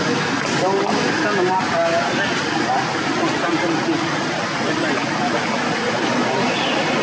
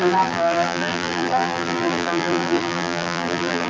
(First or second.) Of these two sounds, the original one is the first